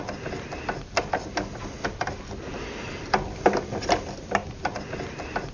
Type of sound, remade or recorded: recorded